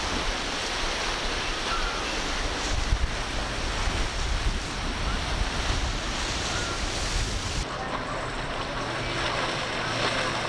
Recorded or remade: recorded